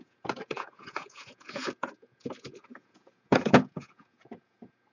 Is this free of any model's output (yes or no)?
no